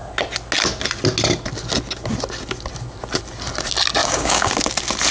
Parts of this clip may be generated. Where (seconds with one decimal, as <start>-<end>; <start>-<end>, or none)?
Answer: 4.0-4.5